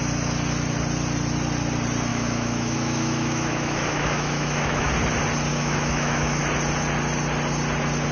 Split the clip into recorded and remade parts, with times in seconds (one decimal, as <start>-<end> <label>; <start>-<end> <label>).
0.0-2.1 recorded; 2.1-4.9 remade; 4.9-5.5 recorded; 5.5-6.4 remade; 6.4-8.1 recorded